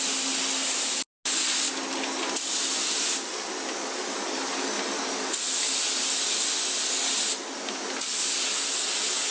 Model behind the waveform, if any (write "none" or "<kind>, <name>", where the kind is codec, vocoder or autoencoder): none